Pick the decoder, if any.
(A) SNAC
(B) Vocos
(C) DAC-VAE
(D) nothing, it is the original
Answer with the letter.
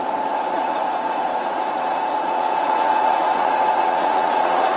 B